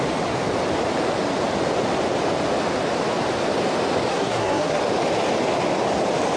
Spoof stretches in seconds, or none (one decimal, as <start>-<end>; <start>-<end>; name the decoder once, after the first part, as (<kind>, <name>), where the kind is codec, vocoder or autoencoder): 4.1-4.8 (codec, SNAC)